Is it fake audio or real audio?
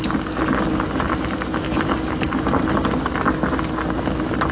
real